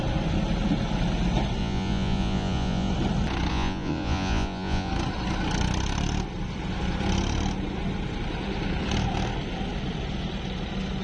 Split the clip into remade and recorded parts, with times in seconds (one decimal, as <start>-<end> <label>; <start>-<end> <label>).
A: 0.0-1.6 recorded; 1.6-2.9 remade; 2.9-3.5 recorded; 3.5-4.9 remade; 4.9-11.0 recorded